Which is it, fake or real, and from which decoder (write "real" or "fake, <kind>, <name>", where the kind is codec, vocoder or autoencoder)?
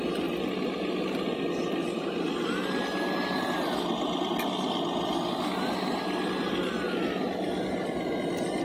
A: real